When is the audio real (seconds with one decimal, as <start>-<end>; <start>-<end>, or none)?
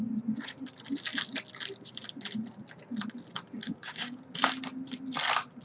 0.0-3.6; 4.2-5.6